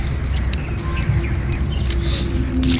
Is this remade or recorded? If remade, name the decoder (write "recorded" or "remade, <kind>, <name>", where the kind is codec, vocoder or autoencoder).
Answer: recorded